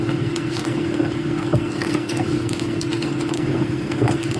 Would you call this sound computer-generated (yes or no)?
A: yes